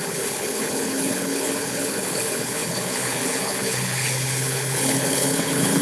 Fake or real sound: fake